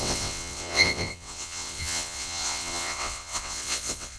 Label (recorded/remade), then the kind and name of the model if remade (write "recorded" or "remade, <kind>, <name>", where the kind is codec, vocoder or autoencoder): remade, vocoder, WaveNeXt